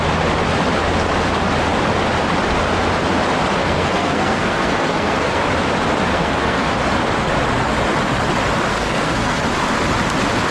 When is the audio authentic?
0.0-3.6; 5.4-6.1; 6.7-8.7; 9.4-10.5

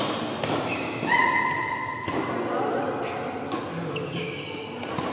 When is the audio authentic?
0.0-5.1

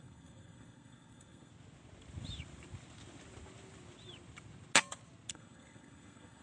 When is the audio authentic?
1.5-5.3

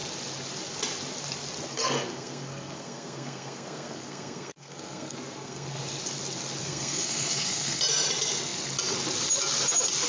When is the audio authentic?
0.0-1.7; 5.8-6.6; 7.8-10.1

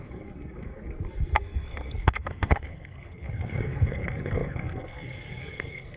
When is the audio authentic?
none

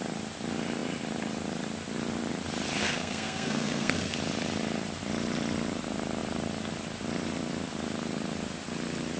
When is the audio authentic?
0.0-2.8; 4.1-9.2